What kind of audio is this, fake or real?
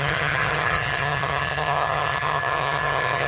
fake